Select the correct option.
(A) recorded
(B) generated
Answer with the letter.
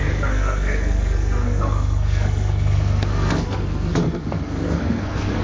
B